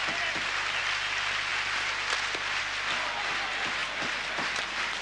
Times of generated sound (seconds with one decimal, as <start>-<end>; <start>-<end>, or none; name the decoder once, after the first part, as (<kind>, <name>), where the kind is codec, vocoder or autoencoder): 3.8-5.0 (vocoder, BigVGAN v2)